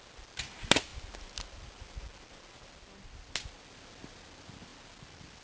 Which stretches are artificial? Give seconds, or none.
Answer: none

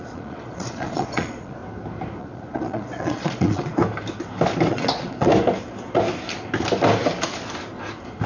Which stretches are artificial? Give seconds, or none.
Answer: 0.0-1.6 (vocoder, Vocos); 2.2-3.8; 4.7-5.3

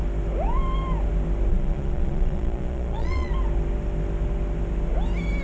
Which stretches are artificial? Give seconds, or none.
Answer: 1.5-3.3 (vocoder, Vocos)

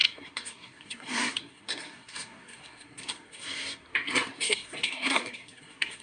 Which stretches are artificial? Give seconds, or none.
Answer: 0.0-6.0 (codec, SNAC)

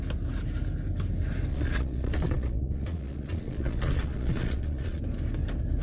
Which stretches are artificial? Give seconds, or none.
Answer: 1.5-5.0 (vocoder, Vocos)

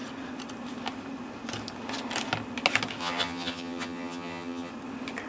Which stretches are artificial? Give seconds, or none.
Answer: 3.0-4.7 (vocoder, HiFi-GAN)